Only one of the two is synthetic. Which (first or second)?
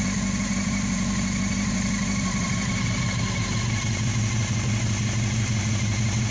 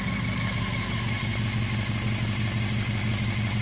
first